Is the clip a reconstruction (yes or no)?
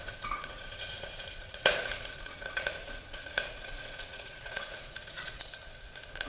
yes